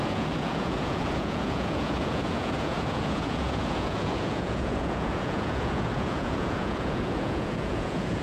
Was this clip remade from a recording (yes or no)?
yes